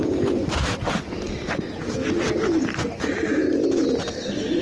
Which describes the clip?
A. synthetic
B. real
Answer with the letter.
B